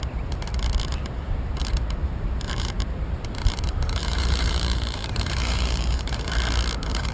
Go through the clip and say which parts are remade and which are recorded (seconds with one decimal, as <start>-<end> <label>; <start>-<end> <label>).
0.0-0.9 recorded; 0.9-1.6 remade; 1.6-2.0 recorded; 2.0-6.3 remade; 6.3-7.1 recorded